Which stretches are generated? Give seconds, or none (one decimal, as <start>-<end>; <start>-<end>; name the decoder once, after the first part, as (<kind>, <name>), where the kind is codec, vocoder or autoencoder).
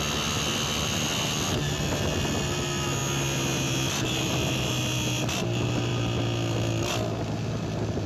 none